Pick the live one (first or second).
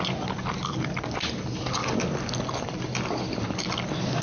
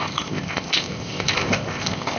first